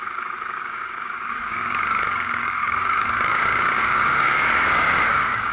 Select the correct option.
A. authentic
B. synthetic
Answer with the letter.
B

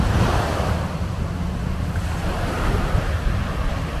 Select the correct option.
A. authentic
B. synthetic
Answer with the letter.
A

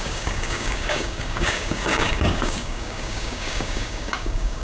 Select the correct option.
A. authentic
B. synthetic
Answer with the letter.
B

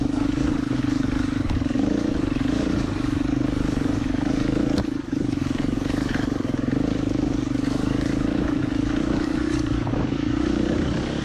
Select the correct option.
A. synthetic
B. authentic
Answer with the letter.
A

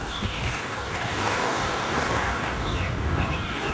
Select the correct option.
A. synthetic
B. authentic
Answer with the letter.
A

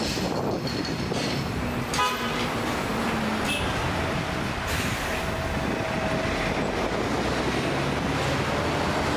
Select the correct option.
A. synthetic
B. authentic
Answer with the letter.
B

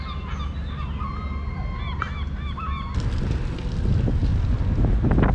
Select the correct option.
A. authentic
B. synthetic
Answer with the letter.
A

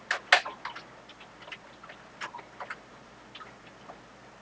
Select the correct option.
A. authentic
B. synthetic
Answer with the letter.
A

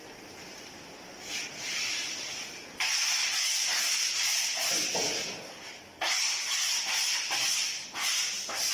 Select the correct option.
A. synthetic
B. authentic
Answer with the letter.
B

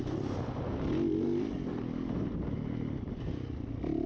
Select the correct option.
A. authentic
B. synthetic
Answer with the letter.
A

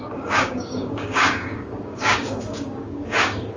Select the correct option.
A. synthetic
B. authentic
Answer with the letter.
A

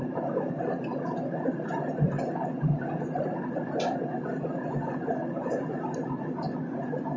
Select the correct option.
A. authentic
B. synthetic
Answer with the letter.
A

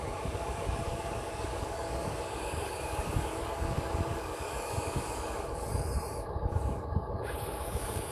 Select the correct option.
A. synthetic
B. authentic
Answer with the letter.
A